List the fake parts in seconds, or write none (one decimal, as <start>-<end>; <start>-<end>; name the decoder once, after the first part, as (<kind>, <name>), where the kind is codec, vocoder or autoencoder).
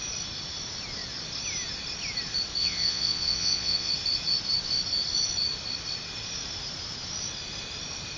2.6-3.9 (vocoder, Vocos)